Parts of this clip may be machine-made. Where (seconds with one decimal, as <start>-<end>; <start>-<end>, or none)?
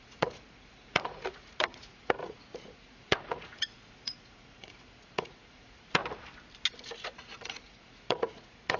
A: 0.0-6.0; 6.9-8.8